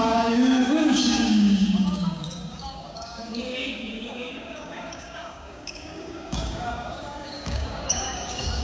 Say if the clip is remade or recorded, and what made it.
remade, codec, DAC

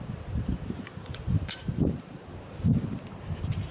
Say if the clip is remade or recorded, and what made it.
remade, vocoder, BigVGAN v2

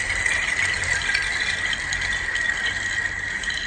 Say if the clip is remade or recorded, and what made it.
recorded